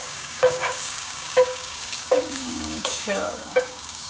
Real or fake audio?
fake